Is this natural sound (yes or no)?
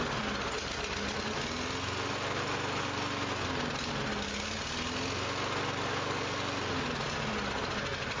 yes